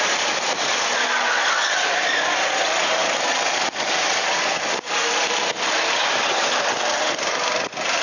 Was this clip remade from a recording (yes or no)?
no